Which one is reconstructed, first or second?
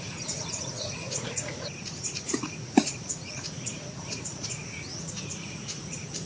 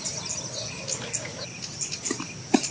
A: first